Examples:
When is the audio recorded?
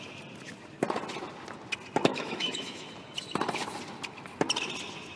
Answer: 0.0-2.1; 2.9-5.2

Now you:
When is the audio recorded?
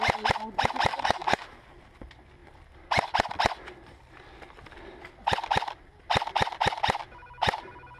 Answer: 0.0-0.9; 1.4-8.0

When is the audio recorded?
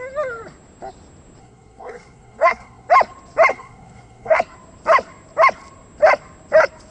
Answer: 0.0-1.4; 2.9-3.5; 4.4-6.9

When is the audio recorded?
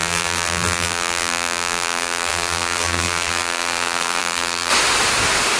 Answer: 4.7-5.6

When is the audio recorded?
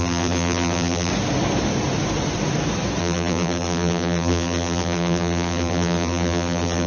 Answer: 1.1-3.0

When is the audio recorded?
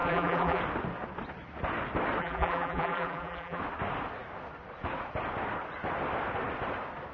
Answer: 0.6-2.2; 3.6-7.1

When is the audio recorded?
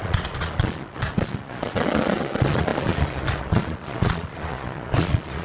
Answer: none